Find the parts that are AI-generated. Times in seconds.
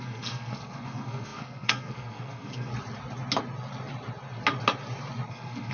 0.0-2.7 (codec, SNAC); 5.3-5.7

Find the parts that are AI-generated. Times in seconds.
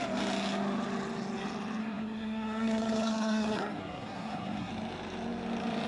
1.8-4.7 (codec, SNAC)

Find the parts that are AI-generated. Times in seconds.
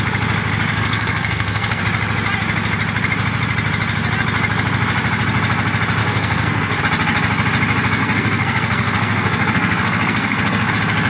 0.7-1.8 (codec, SNAC); 6.0-6.8; 8.0-10.7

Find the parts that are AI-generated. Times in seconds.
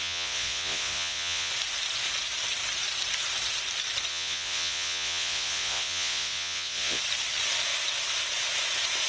0.0-1.5 (vocoder, Vocos); 4.1-7.0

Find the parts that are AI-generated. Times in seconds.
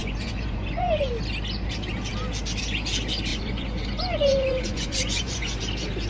0.0-1.1 (vocoder, Vocos); 3.3-5.6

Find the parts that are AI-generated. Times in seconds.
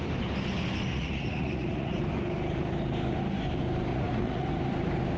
0.9-2.0 (vocoder, Vocos); 3.9-4.5